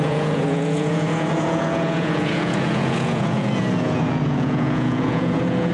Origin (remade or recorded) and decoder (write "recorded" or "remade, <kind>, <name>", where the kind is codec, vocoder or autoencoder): remade, vocoder, Vocos